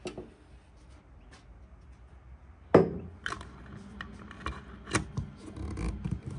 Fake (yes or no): no